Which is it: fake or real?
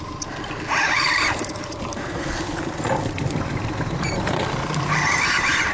fake